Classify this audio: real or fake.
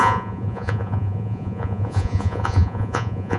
fake